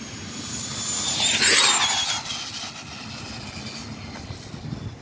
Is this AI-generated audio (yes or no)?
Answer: no